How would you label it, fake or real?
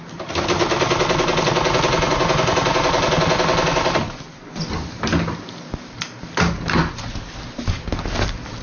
real